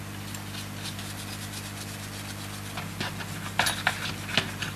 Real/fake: real